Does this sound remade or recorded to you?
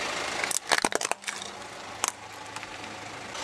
recorded